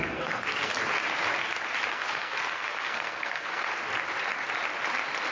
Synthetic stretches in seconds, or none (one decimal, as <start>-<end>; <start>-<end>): 0.0-0.7; 1.9-3.7